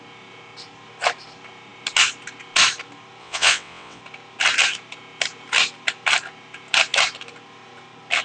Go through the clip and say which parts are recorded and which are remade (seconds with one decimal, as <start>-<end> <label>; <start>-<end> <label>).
0.0-3.2 recorded; 3.2-4.0 remade; 4.0-8.2 recorded